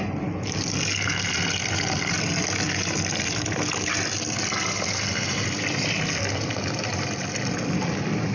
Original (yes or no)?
yes